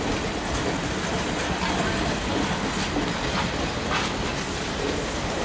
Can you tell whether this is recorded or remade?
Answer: recorded